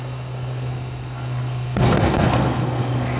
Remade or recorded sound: remade